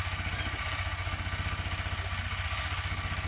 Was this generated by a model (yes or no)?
no